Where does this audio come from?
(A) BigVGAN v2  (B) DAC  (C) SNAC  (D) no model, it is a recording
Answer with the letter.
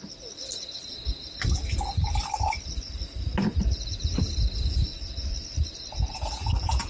D